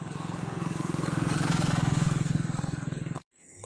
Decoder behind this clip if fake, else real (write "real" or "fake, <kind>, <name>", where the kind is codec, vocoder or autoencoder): fake, codec, SNAC